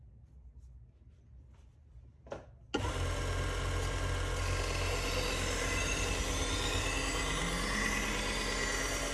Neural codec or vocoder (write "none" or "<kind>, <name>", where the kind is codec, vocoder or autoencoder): none